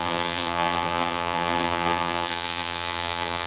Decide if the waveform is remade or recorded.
remade